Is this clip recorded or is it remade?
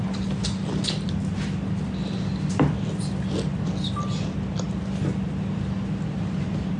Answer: recorded